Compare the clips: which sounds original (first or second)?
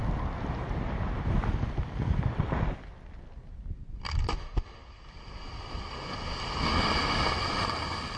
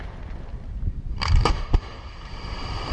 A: first